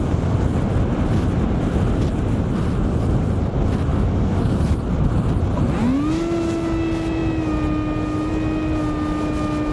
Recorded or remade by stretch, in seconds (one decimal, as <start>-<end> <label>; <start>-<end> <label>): 0.0-3.9 recorded; 3.9-4.6 remade; 4.6-9.7 recorded